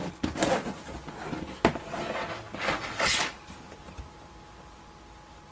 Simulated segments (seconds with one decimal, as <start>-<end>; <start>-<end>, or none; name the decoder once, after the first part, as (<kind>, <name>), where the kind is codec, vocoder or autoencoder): none